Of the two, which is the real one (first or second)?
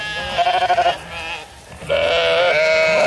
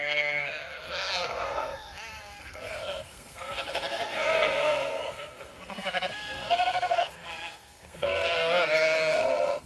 first